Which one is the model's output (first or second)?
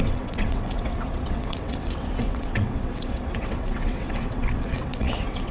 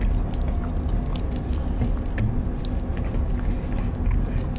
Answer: first